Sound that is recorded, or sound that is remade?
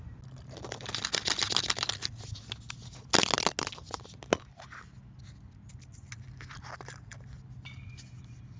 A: recorded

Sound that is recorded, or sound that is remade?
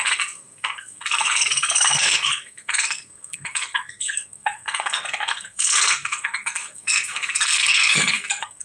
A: remade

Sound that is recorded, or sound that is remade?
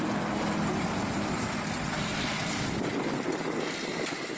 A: recorded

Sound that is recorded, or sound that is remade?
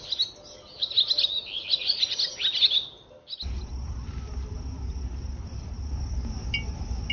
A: recorded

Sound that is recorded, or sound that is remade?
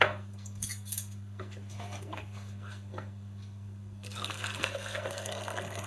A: remade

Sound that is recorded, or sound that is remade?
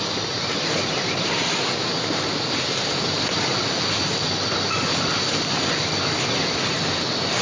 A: recorded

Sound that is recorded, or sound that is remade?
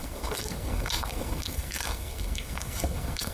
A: remade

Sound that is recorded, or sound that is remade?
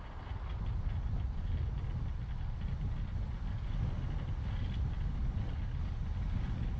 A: recorded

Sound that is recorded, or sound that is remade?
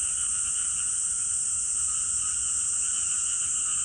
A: recorded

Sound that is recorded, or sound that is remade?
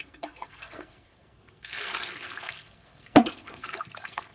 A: remade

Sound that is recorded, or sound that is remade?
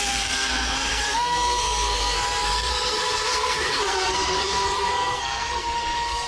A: remade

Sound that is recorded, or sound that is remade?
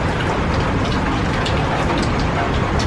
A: recorded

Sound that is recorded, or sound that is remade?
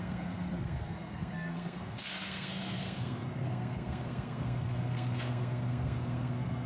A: remade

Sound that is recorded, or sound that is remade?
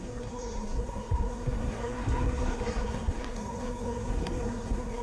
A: remade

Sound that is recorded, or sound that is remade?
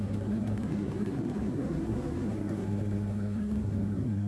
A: remade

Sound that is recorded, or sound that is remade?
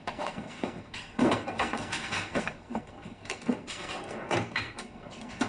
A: remade